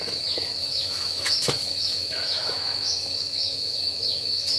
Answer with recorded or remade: remade